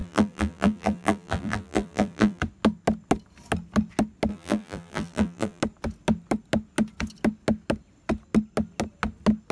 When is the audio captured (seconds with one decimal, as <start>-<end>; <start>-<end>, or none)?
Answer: 2.4-4.3; 5.6-9.5